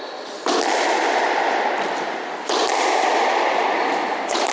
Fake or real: real